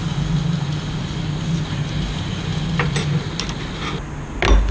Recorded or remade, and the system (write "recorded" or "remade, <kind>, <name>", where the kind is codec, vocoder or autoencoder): recorded